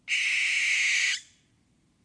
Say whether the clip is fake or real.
real